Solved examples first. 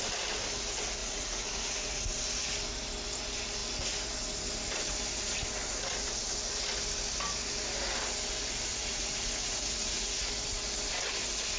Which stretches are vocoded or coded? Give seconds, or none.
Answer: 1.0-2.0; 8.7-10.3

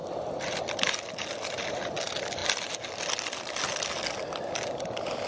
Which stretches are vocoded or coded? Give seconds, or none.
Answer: none

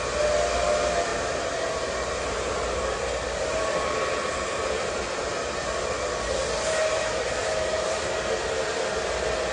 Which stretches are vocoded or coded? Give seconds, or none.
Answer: 1.1-5.0; 6.8-8.0

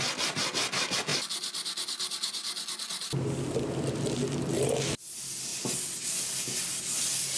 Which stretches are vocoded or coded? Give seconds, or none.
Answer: none

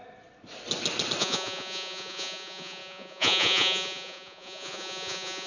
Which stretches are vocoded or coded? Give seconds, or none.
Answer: 1.2-5.5